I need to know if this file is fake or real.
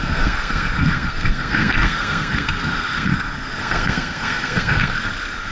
fake